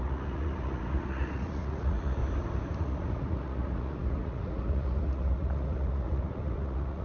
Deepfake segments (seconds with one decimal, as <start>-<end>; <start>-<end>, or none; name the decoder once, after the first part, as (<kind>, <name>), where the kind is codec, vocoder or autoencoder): 0.0-2.2 (vocoder, Vocos); 2.8-7.0